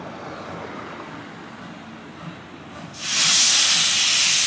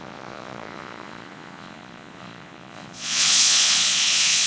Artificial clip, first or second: second